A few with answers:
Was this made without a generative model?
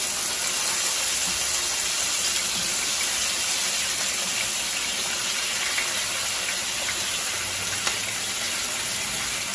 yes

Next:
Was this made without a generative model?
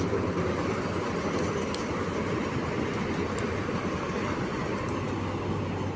yes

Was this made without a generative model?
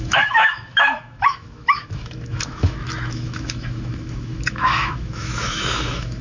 no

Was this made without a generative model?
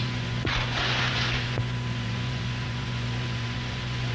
no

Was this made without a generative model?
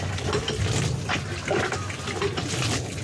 yes